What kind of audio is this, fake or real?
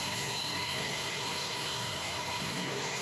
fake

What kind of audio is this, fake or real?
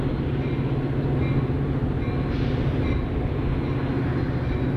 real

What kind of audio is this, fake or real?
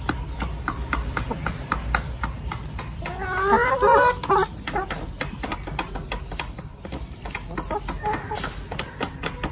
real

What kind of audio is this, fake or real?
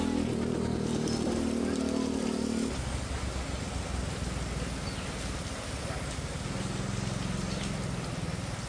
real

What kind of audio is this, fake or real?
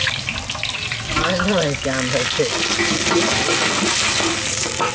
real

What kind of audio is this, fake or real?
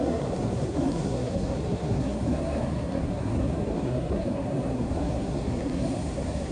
fake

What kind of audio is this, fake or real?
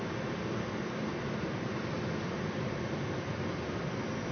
real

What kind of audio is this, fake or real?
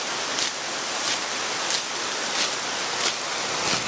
real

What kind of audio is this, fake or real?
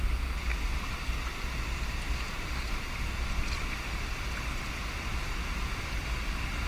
real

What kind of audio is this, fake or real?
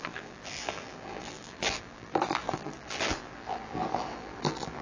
fake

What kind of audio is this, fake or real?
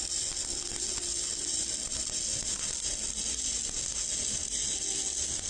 real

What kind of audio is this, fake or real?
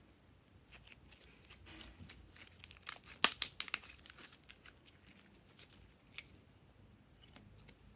real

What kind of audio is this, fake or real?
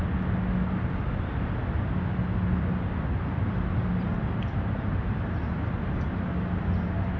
real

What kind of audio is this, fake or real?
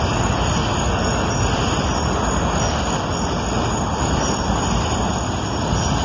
fake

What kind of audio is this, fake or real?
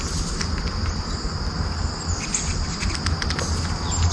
real